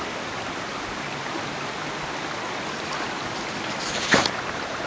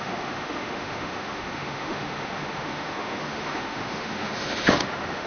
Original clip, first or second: first